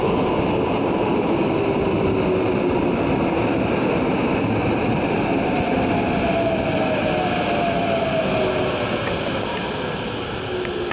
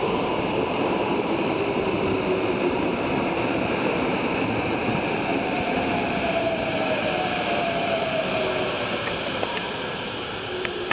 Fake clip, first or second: second